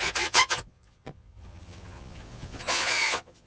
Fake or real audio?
fake